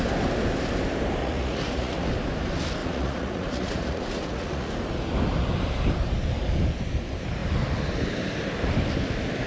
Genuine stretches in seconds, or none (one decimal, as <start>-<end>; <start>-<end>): 0.0-1.2; 2.1-2.8; 4.7-9.5